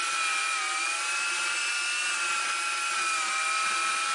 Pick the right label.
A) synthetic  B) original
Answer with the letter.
B